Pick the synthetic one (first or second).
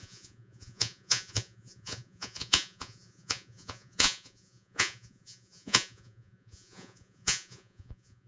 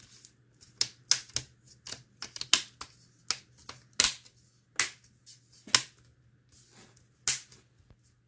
first